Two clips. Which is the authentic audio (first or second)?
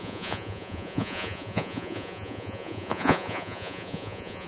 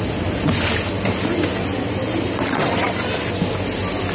second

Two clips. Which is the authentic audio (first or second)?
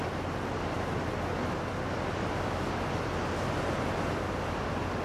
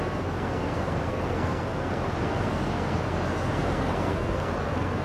first